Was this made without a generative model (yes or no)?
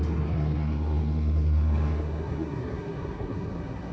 no